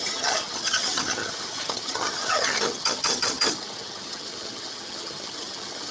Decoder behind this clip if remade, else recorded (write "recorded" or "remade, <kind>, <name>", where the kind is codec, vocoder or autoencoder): remade, vocoder, HiFi-GAN